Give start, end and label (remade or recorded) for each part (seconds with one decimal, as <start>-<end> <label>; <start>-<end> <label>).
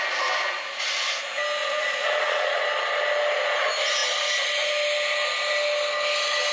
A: 0.0-1.6 recorded; 1.6-2.6 remade; 2.6-6.5 recorded